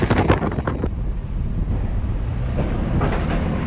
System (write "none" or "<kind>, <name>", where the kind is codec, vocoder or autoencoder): none